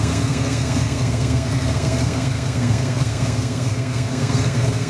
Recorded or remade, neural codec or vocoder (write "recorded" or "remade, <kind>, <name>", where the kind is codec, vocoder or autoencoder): remade, codec, SNAC